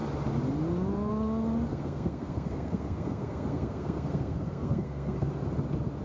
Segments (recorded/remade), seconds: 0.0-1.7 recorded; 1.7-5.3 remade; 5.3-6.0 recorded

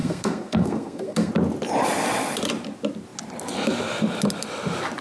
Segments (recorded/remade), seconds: 0.0-1.3 remade; 1.3-5.0 recorded

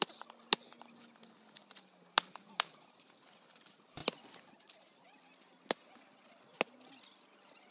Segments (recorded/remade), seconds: 0.0-7.7 recorded

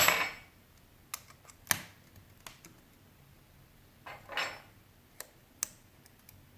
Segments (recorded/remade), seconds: 0.0-6.6 recorded